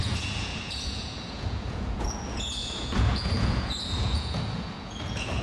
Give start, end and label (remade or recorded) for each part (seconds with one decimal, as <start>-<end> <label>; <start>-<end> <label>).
0.0-5.4 remade